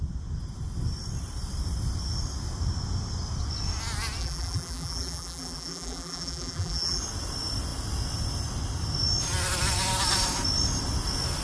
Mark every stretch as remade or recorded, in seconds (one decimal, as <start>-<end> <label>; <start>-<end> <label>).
0.0-4.2 recorded; 4.2-7.0 remade; 7.0-11.4 recorded